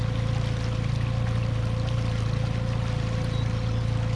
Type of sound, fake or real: real